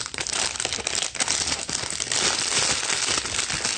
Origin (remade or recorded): recorded